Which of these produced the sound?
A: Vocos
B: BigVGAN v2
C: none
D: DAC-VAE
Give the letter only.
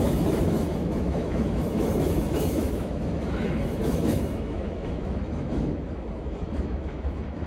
D